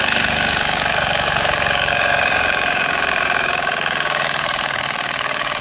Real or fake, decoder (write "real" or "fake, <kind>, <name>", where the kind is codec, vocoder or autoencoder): fake, codec, DAC